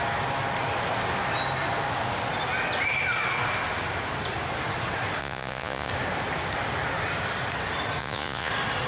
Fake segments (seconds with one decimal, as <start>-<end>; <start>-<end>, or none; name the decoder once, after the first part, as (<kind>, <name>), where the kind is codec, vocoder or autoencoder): 5.2-5.9 (vocoder, Vocos); 8.0-8.5

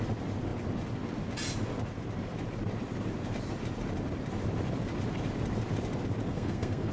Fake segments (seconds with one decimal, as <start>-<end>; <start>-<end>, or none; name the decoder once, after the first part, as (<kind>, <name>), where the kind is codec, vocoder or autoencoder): 6.3-6.9 (codec, SNAC)

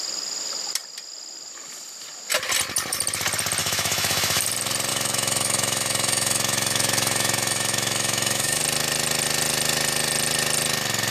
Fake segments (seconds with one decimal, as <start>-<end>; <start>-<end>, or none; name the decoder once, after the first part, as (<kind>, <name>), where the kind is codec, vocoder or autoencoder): 3.6-4.4 (autoencoder, DAC-VAE); 4.9-8.6

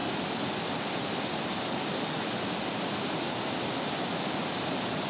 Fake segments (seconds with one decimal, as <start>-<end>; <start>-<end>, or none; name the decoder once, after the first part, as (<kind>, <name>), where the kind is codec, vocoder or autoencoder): none

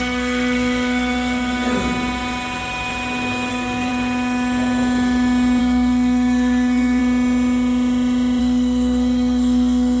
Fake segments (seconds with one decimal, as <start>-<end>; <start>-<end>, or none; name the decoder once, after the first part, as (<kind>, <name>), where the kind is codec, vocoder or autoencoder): 0.0-1.8 (codec, SNAC); 3.5-3.9; 5.6-7.0; 8.4-10.0

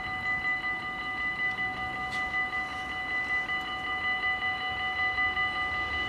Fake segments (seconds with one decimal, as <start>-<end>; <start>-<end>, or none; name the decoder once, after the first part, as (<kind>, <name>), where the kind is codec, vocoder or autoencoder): none

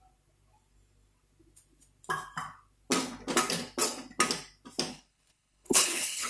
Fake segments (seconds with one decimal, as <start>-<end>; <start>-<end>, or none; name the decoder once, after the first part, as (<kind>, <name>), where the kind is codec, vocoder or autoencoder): 4.9-6.3 (codec, HILCodec)